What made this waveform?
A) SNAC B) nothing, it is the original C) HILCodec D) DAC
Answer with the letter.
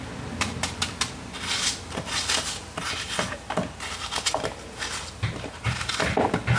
B